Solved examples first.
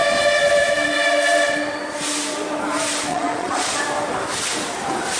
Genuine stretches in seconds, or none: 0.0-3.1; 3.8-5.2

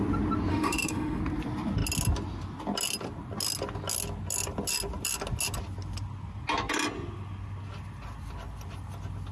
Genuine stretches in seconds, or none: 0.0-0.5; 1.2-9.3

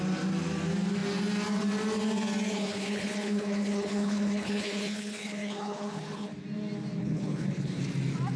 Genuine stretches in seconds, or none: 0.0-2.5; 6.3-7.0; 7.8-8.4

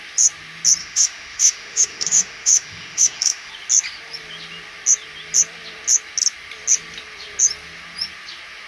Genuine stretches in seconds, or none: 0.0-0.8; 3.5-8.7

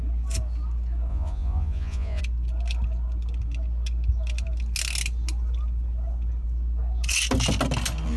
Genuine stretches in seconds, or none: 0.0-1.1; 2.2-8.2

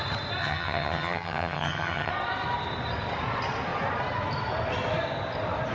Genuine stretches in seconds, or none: 0.0-0.4; 2.1-5.7